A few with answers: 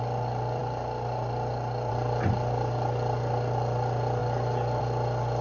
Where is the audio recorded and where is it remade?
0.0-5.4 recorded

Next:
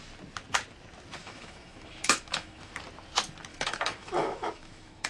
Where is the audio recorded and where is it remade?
0.0-1.2 recorded; 1.2-2.7 remade; 2.7-3.5 recorded; 3.5-5.1 remade

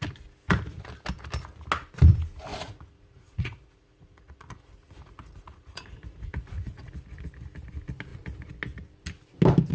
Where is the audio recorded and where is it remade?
0.0-2.5 recorded; 2.5-6.9 remade; 6.9-9.7 recorded

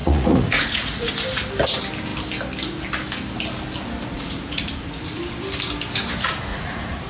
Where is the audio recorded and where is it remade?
0.0-1.1 remade; 1.1-4.1 recorded; 4.1-5.2 remade; 5.2-6.5 recorded; 6.5-7.1 remade

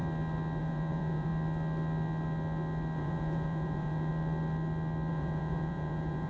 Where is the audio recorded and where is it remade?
0.0-0.6 recorded; 0.6-1.3 remade; 1.3-3.0 recorded; 3.0-4.1 remade; 4.1-5.1 recorded; 5.1-6.3 remade

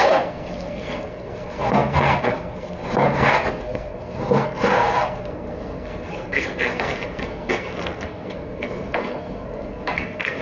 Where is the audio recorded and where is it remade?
0.0-10.4 remade

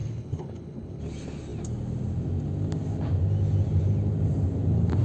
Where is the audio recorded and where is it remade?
0.0-1.0 remade; 1.0-5.0 recorded

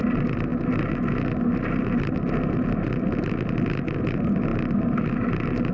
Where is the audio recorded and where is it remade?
0.0-5.7 recorded